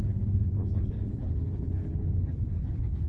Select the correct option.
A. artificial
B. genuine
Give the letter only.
A